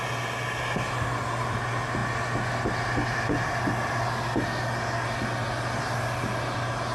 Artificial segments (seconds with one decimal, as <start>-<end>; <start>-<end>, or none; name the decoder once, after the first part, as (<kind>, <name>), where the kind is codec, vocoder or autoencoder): none